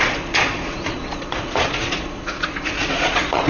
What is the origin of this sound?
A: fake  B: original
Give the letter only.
A